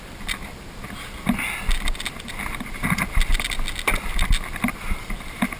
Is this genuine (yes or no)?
yes